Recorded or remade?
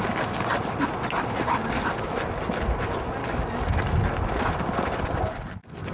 recorded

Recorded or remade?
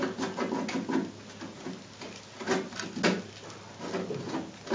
recorded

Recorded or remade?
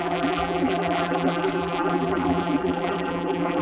remade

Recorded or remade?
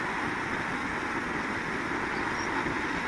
recorded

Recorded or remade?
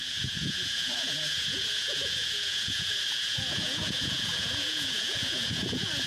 remade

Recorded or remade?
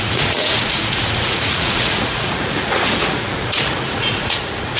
remade